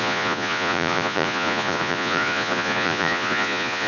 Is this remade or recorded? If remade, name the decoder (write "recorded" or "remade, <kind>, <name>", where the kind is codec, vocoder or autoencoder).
remade, vocoder, Vocos